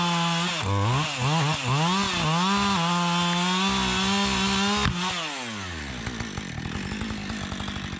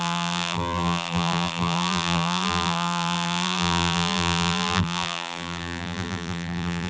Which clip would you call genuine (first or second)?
first